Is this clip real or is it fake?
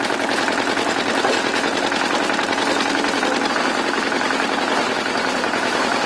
fake